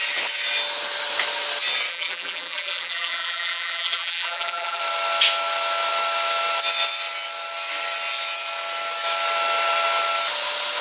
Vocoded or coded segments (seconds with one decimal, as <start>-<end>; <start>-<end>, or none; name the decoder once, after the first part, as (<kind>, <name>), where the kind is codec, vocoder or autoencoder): 1.9-4.8 (vocoder, BigVGAN v2)